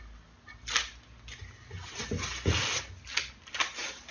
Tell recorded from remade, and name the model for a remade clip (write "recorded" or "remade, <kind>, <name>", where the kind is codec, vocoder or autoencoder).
recorded